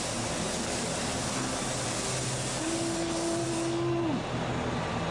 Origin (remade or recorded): recorded